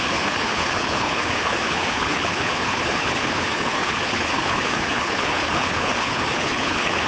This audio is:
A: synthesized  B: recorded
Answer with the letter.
A